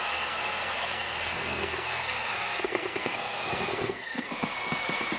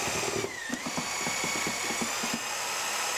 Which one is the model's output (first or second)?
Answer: first